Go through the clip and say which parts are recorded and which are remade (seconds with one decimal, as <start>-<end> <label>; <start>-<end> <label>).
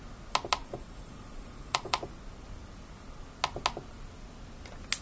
0.0-0.6 recorded; 0.6-2.1 remade; 2.1-5.0 recorded